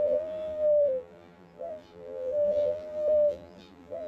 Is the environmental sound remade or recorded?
remade